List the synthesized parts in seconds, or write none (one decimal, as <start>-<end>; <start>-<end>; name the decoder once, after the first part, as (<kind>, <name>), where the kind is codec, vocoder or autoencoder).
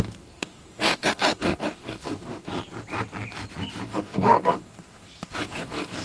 0.0-2.5 (codec, DAC); 3.8-6.0